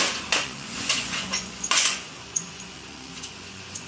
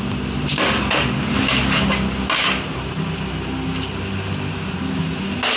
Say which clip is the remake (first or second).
first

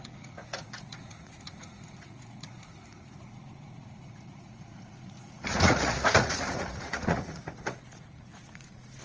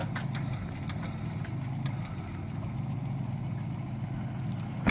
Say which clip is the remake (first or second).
first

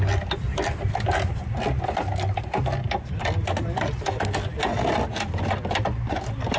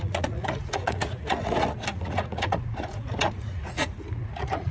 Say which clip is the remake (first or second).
second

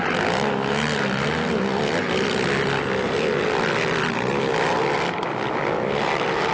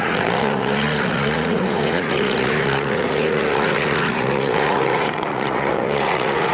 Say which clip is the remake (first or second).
second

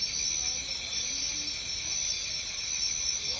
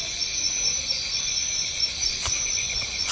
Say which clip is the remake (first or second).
second